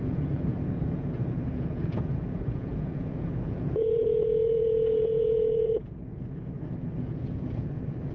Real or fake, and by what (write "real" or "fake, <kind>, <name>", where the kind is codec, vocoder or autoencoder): fake, vocoder, Vocos